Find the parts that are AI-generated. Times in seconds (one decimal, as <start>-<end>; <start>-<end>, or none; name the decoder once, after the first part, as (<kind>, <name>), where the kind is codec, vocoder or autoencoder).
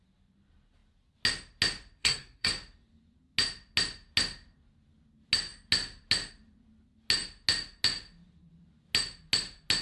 2.0-2.5 (codec, SNAC)